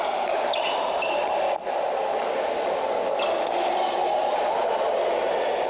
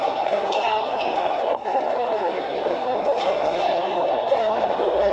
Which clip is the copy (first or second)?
second